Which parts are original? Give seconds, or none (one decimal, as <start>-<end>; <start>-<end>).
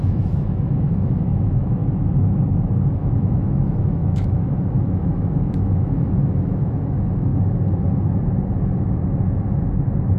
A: 1.8-2.5; 7.3-10.2